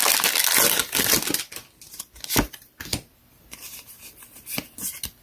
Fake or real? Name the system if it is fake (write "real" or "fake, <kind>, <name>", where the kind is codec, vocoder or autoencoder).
real